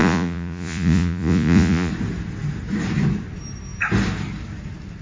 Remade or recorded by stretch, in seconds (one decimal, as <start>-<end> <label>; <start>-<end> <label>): 0.0-1.9 remade; 1.9-5.0 recorded